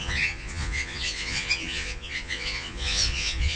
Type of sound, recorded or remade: remade